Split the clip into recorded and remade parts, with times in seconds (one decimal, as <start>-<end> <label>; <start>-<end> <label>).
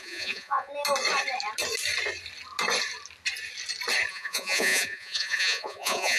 0.0-0.7 remade; 0.7-4.1 recorded; 4.1-6.2 remade